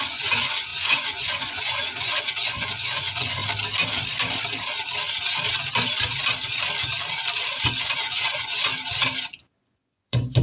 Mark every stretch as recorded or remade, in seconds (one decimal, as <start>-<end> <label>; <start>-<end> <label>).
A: 0.0-3.4 remade; 3.4-7.7 recorded; 7.7-8.7 remade; 8.7-9.6 recorded; 9.6-10.4 remade